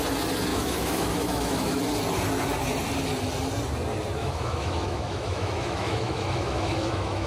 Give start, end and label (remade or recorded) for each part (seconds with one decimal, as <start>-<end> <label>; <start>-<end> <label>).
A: 0.0-0.5 recorded; 0.5-1.8 remade; 1.8-4.2 recorded; 4.2-7.3 remade